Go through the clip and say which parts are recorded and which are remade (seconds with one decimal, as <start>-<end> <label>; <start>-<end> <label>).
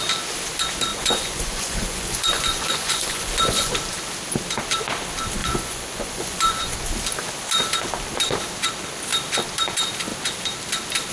0.0-0.9 recorded; 0.9-3.7 remade; 3.7-5.4 recorded; 5.4-6.8 remade; 6.8-11.1 recorded